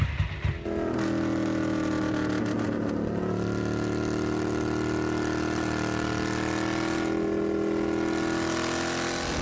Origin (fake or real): real